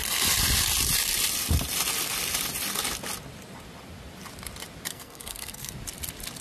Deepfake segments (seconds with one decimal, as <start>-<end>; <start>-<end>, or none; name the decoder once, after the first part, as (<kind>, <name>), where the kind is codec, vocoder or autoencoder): 4.9-5.7 (codec, SNAC)